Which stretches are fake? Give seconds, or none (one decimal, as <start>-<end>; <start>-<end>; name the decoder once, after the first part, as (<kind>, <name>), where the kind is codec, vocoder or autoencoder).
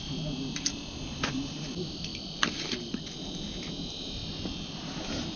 none